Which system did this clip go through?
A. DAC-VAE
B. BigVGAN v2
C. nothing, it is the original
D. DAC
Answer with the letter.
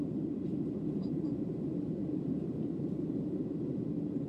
B